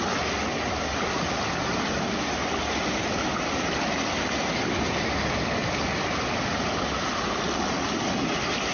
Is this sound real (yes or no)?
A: yes